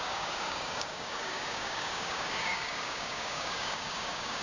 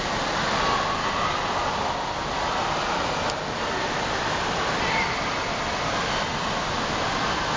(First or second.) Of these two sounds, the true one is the second